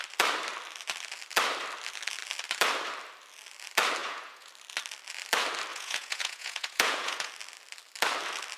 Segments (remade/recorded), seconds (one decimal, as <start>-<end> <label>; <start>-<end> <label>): 0.0-4.0 recorded; 4.0-4.5 remade; 4.5-5.7 recorded; 5.7-7.3 remade; 7.3-8.6 recorded